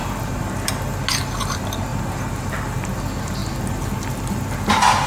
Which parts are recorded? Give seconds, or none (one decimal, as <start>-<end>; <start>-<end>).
1.0-1.9; 3.0-5.1